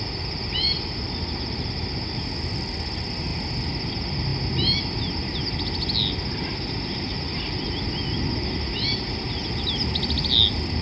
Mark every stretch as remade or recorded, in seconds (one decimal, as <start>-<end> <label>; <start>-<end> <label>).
0.0-10.8 recorded